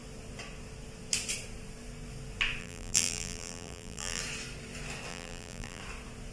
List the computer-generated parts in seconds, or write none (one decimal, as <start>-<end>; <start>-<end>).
2.6-4.2; 5.1-5.8